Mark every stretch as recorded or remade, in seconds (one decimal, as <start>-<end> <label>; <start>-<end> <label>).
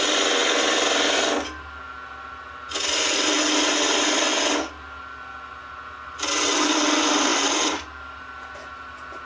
0.0-9.3 recorded